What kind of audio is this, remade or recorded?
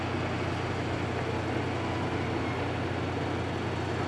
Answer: recorded